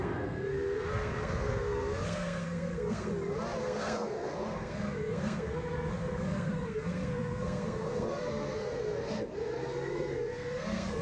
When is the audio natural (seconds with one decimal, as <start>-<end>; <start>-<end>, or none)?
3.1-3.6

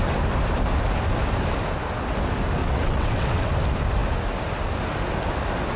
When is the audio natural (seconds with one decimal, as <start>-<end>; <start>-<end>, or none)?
0.0-2.6; 3.5-5.8

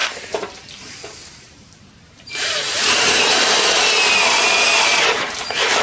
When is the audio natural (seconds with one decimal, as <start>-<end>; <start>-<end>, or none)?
3.5-4.9